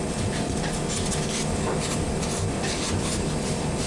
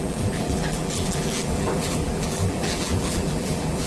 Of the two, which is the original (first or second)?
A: first